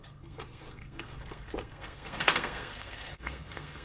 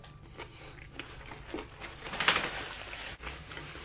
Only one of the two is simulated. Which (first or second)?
first